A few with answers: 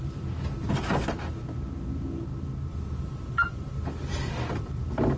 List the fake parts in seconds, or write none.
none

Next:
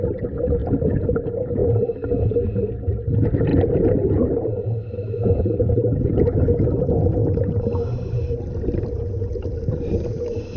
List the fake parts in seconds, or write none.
3.5-6.5 (vocoder, BigVGAN v2); 7.2-7.8

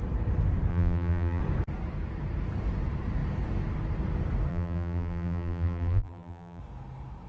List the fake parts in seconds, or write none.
0.7-1.4 (vocoder, BigVGAN v2); 4.5-6.6

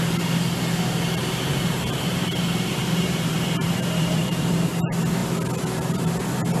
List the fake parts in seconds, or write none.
1.2-4.5 (vocoder, BigVGAN v2)

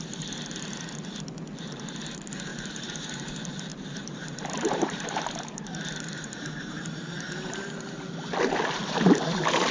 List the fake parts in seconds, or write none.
2.5-3.3 (vocoder, BigVGAN v2); 3.7-7.6

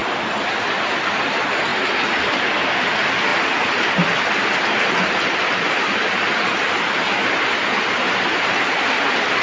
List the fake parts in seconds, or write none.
0.6-1.7 (vocoder, BigVGAN v2); 2.7-3.3; 8.4-9.4

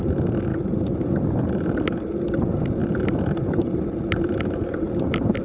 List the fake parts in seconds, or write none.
0.5-2.3 (vocoder, BigVGAN v2)

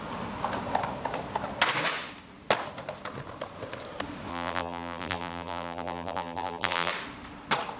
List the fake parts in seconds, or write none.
4.3-6.9 (vocoder, BigVGAN v2)